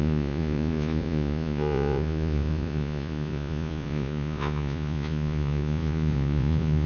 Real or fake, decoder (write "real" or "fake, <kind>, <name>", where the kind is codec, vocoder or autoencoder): fake, vocoder, Vocos